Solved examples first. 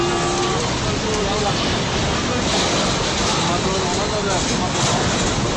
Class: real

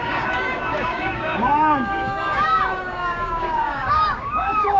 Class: fake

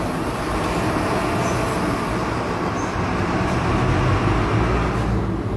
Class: real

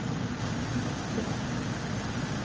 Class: real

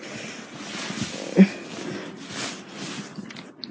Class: real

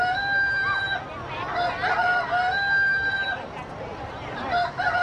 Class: real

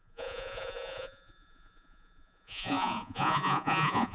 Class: fake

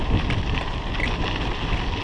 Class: real